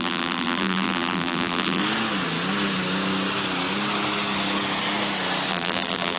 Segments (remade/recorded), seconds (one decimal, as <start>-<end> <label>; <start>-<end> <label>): 0.0-1.8 remade; 1.8-5.5 recorded; 5.5-6.2 remade